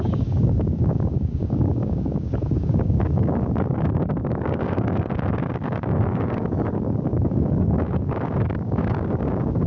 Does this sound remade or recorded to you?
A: remade